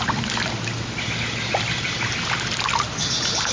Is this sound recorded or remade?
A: recorded